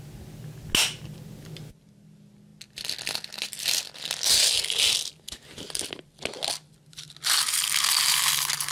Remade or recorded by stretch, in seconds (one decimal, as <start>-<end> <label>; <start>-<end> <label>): 0.0-8.7 recorded